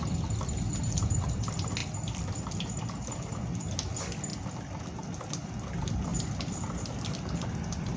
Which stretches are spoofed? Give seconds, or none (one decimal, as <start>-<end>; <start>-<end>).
1.8-2.8; 4.3-4.8; 6.1-7.2